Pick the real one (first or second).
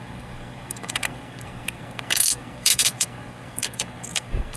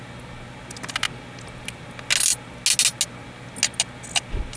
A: second